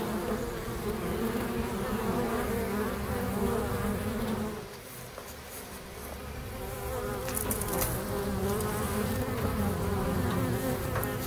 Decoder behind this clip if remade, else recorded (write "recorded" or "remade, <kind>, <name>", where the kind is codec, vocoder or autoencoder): recorded